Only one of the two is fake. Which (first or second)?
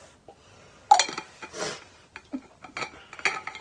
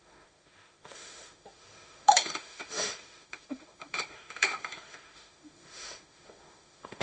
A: second